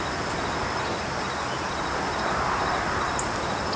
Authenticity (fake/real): real